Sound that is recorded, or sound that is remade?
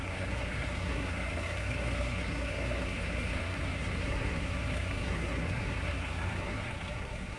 remade